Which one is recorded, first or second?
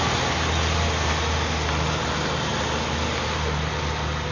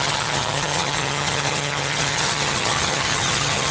first